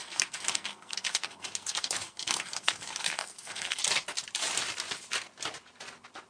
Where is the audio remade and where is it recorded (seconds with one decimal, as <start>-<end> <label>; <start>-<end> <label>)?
0.0-3.8 remade; 3.8-6.3 recorded